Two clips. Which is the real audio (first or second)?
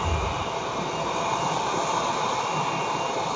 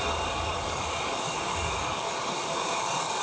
first